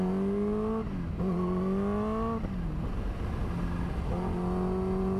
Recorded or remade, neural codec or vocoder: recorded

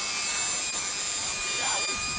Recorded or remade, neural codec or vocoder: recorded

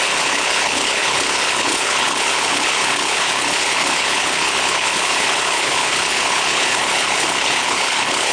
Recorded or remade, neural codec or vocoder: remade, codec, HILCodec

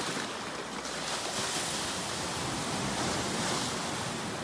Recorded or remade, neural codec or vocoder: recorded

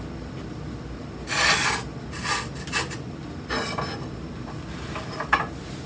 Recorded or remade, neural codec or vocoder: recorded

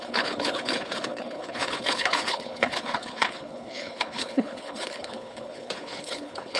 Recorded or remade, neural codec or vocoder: remade, codec, HILCodec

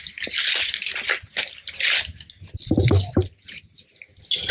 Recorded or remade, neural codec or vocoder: recorded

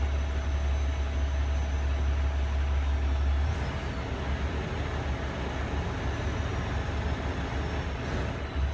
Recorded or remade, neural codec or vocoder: recorded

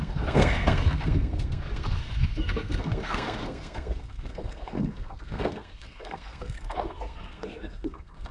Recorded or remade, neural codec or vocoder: remade, codec, SNAC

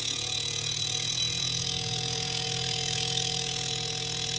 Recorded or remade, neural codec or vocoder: remade, vocoder, Vocos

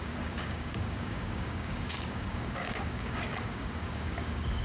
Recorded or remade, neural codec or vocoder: remade, codec, DAC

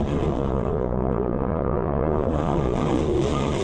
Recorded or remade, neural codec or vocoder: remade, vocoder, Vocos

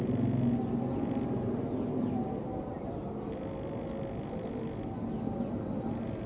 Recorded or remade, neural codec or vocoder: recorded